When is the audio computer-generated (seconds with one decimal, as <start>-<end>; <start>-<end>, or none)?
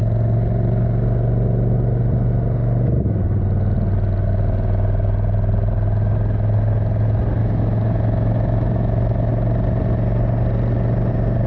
7.4-9.3